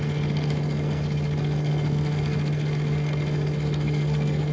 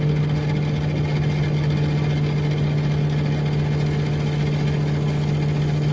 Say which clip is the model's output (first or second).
first